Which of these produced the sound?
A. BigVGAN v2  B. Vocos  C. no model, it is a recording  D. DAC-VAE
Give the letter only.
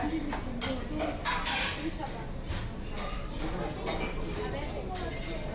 C